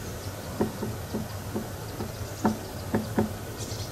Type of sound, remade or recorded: recorded